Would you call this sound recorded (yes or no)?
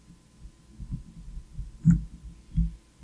yes